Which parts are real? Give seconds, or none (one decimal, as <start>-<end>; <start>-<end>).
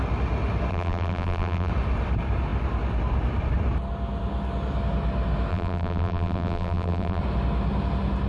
0.0-0.7; 1.7-5.5; 7.2-8.3